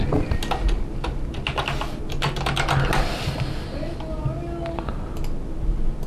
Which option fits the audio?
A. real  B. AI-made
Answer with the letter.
A